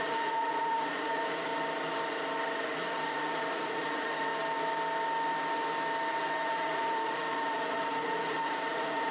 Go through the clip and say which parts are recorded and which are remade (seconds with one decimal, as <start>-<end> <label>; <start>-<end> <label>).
0.0-1.5 remade; 1.5-2.6 recorded; 2.6-4.3 remade; 4.3-6.1 recorded; 6.1-9.1 remade